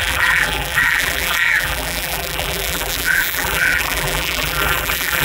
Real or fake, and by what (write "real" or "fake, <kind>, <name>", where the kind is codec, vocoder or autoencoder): fake, vocoder, BigVGAN v2